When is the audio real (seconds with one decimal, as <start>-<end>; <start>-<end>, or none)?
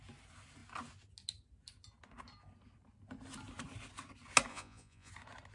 0.0-4.5; 5.1-5.5